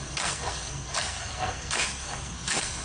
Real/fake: fake